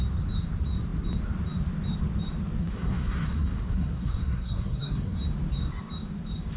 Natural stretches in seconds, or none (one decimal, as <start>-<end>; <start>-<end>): 0.0-2.6; 5.2-6.6